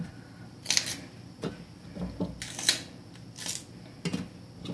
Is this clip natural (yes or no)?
yes